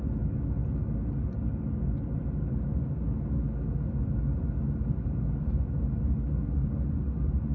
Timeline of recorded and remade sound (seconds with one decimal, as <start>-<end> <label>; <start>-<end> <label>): 0.0-7.5 recorded